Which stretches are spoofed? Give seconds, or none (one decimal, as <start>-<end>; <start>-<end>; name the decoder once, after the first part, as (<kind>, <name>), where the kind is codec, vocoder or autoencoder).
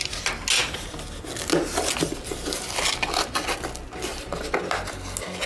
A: none